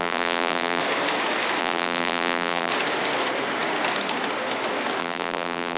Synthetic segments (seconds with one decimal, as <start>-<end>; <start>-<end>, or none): 0.0-0.8; 1.6-2.7; 5.0-5.8